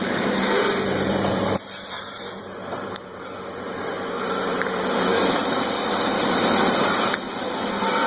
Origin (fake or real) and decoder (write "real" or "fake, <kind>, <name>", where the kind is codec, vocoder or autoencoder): fake, vocoder, BigVGAN v2